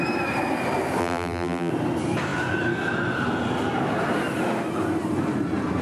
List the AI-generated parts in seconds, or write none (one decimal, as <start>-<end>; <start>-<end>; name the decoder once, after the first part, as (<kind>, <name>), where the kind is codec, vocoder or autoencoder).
1.0-1.7 (vocoder, BigVGAN v2)